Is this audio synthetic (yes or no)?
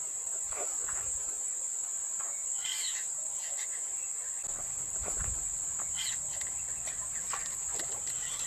no